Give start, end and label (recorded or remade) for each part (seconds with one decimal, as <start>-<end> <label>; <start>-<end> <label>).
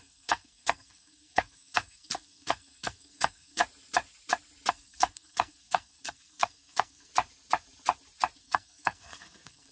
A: 0.0-3.6 remade; 3.6-4.7 recorded; 4.7-7.1 remade; 7.1-8.4 recorded; 8.4-9.7 remade